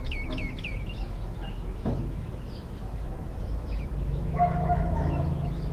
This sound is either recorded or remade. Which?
remade